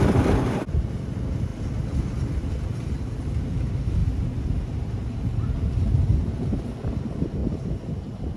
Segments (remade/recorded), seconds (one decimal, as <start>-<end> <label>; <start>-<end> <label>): 0.0-8.4 recorded